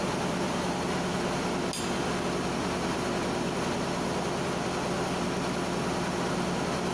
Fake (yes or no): no